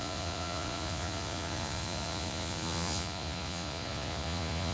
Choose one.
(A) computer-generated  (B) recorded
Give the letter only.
A